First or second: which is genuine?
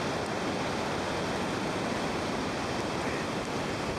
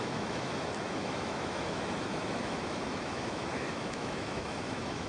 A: first